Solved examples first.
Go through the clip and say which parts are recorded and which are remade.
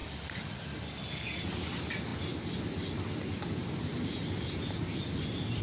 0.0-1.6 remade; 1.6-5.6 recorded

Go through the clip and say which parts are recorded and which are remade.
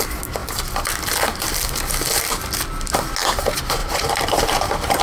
0.0-3.8 recorded; 3.8-5.0 remade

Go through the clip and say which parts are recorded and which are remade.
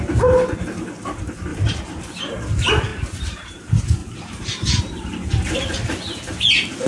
0.0-1.5 recorded; 1.5-2.2 remade; 2.2-2.9 recorded; 2.9-3.6 remade; 3.6-4.0 recorded; 4.0-4.8 remade; 4.8-6.9 recorded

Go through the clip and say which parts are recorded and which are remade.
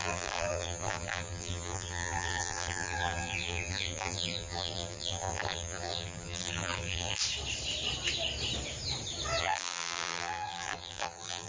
0.0-7.2 remade; 7.2-9.4 recorded; 9.4-11.5 remade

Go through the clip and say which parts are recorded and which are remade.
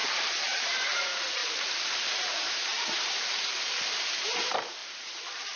0.0-4.8 remade; 4.8-5.6 recorded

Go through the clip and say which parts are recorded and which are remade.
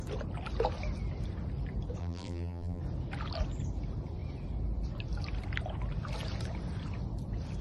0.0-2.0 recorded; 2.0-2.8 remade; 2.8-7.6 recorded